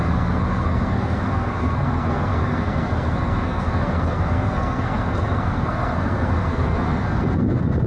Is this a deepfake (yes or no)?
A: yes